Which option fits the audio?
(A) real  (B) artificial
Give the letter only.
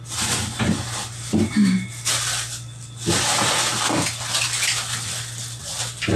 A